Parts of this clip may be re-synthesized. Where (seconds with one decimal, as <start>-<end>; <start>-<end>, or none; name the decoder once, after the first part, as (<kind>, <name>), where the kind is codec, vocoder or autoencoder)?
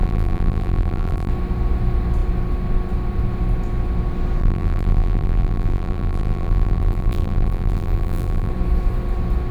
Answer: 0.0-1.3 (vocoder, BigVGAN v2); 4.4-8.5